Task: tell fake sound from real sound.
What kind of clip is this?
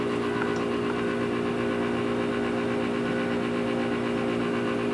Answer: real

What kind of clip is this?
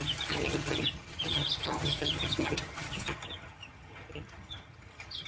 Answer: fake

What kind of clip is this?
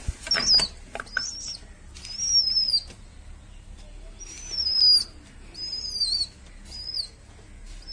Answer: real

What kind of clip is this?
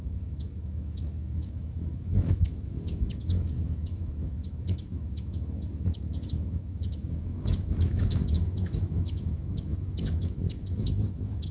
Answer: fake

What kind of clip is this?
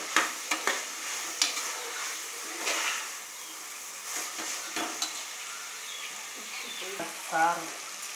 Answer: real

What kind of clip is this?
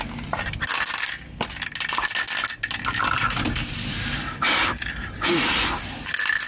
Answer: real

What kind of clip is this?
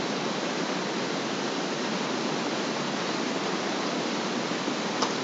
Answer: real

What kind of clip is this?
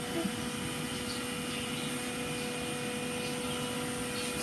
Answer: real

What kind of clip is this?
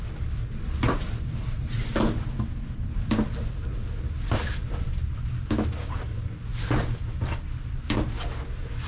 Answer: real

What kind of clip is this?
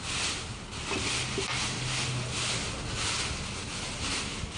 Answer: real